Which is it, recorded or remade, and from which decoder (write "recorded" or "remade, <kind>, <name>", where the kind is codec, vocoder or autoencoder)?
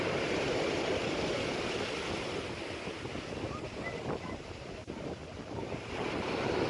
recorded